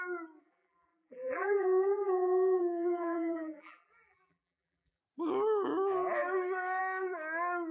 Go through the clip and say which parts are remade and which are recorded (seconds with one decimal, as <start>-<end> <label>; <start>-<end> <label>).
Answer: 0.0-0.4 recorded; 0.4-5.0 remade; 5.0-7.7 recorded